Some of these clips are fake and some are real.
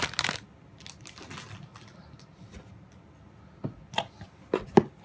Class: real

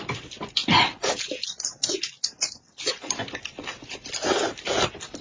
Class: real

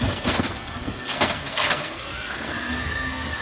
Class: fake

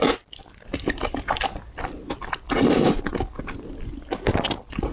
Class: real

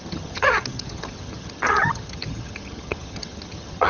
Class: fake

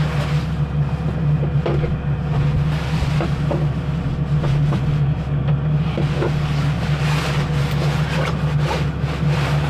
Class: real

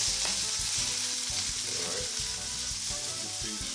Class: real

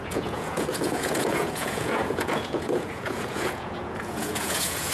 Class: fake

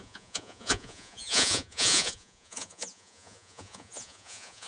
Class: fake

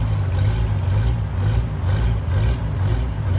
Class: real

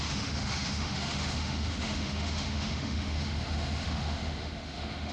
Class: fake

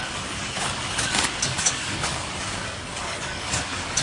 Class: fake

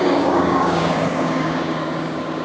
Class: fake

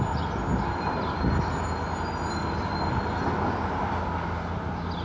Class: real